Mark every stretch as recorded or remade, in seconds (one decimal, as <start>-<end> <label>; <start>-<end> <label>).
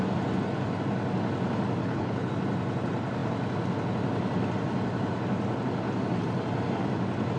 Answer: 0.0-1.8 recorded; 1.8-2.3 remade; 2.3-7.4 recorded